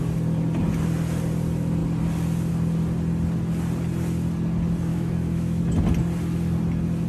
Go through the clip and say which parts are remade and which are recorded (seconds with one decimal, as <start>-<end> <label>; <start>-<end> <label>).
0.0-4.9 recorded; 4.9-5.6 remade; 5.6-7.1 recorded